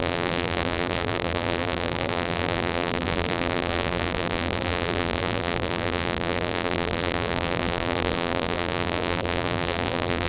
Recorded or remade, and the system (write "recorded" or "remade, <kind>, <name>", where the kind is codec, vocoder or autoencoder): remade, vocoder, BigVGAN v2